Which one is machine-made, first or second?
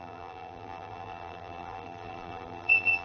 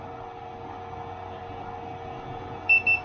first